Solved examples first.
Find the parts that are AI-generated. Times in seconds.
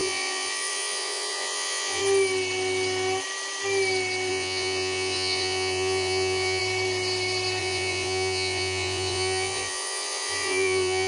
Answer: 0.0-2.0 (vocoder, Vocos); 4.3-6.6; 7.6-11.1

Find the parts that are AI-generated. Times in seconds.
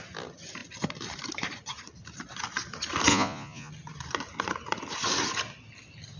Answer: 3.1-3.7 (vocoder, Vocos)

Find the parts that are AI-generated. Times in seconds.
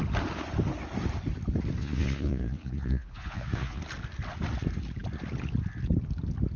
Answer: 1.8-3.8 (vocoder, Vocos)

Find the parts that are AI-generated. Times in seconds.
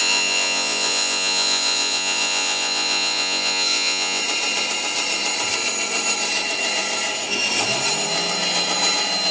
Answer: 0.0-4.2 (vocoder, Vocos)